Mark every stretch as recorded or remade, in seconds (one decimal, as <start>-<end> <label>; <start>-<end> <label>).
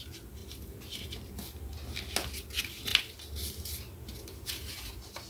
0.0-0.4 recorded; 0.4-1.0 remade; 1.0-5.3 recorded